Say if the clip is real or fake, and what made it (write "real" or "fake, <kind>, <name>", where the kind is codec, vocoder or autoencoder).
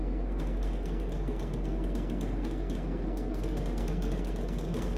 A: fake, codec, SNAC